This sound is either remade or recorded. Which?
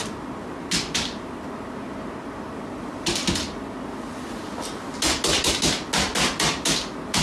recorded